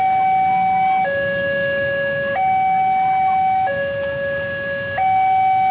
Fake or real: real